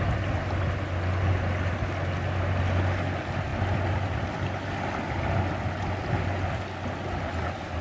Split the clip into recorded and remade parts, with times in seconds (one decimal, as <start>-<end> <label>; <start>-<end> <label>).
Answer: 0.0-7.8 recorded